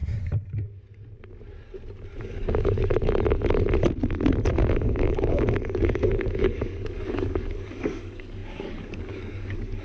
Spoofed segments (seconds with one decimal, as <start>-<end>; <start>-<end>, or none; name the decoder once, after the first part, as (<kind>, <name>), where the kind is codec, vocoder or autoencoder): 2.2-2.9 (codec, DAC); 4.5-9.8